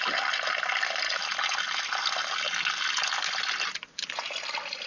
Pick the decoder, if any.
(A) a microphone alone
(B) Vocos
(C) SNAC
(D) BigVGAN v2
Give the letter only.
A